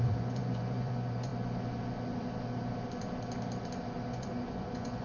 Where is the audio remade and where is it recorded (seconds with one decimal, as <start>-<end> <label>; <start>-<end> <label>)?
0.0-1.3 remade; 1.3-4.1 recorded; 4.1-5.0 remade